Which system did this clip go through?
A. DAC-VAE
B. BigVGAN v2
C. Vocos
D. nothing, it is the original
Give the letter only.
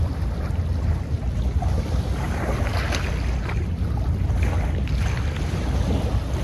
D